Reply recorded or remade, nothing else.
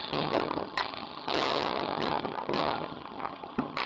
remade